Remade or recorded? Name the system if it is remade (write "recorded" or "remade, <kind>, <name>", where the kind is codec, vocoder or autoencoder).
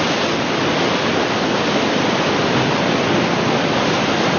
recorded